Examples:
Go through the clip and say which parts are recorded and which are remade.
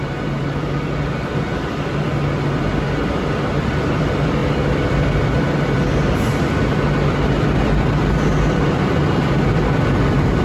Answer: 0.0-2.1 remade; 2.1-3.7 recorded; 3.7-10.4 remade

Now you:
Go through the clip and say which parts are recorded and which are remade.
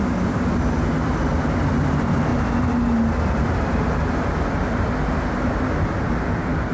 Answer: 0.0-6.7 recorded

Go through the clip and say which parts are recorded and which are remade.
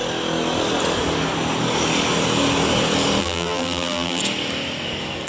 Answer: 0.0-3.2 recorded; 3.2-4.2 remade; 4.2-5.3 recorded